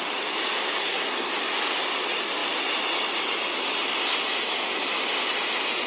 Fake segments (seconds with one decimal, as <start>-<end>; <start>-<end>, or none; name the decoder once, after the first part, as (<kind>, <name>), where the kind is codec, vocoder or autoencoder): 0.8-1.3 (codec, SNAC)